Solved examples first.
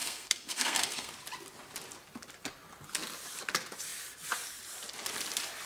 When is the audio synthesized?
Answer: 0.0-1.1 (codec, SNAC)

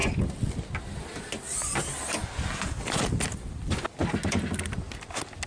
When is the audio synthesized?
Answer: none

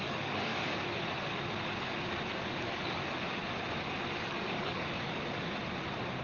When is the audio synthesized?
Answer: 0.0-0.5 (codec, DAC); 2.6-3.0; 4.2-5.2

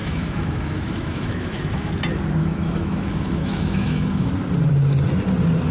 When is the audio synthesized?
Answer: 0.0-1.9 (autoencoder, DAC-VAE); 2.4-4.3

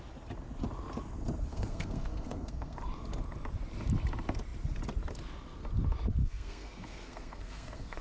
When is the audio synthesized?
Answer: 1.5-2.8 (codec, SNAC); 6.2-8.0

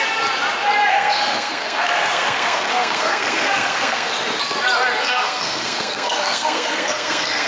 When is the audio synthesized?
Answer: 0.9-4.1 (codec, SNAC); 5.0-7.5

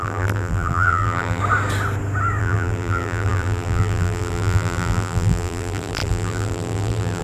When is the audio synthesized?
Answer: 0.0-1.4 (vocoder, BigVGAN v2); 2.4-7.2